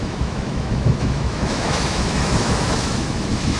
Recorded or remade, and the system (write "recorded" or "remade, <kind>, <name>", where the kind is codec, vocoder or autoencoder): remade, autoencoder, DAC-VAE